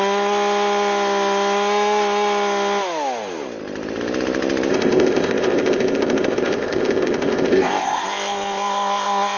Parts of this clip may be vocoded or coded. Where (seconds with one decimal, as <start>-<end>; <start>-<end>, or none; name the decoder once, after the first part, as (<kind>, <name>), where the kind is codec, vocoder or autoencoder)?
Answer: 4.7-9.4 (codec, ZipCodec)